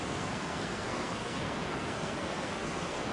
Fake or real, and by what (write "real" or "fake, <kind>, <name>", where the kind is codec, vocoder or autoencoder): fake, codec, SNAC